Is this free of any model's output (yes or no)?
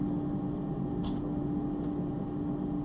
yes